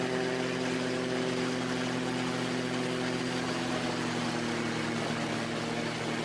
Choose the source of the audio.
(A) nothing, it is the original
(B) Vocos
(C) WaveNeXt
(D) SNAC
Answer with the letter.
A